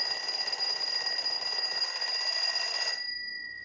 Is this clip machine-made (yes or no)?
no